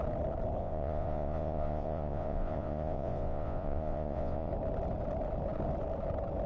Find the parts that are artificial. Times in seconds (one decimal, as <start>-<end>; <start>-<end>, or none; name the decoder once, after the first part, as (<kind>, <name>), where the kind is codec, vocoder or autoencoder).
0.6-4.5 (vocoder, Vocos)

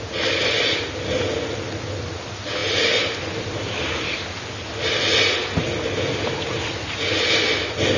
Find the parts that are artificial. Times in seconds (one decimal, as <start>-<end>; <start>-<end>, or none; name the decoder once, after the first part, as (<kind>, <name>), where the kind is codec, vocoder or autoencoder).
none

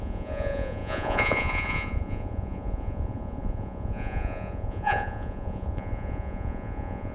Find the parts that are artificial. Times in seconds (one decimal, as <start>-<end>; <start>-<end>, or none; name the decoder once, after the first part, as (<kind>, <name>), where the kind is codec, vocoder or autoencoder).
0.0-7.1 (vocoder, Vocos)

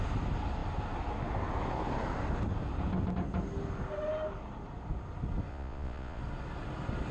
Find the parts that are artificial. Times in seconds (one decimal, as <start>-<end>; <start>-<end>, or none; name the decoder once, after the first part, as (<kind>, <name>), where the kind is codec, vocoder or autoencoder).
5.5-6.2 (vocoder, Vocos)

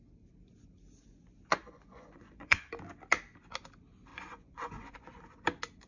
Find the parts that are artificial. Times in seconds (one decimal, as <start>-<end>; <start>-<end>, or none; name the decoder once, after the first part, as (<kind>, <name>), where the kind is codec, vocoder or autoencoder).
1.5-2.7 (vocoder, Vocos); 4.1-5.2

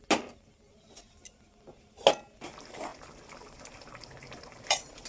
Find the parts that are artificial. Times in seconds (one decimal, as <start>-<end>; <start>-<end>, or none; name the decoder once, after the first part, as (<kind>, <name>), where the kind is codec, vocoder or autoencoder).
none

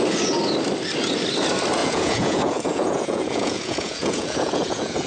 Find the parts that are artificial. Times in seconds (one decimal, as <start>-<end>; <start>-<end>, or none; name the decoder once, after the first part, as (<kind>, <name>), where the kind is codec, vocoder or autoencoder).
1.8-5.1 (vocoder, Vocos)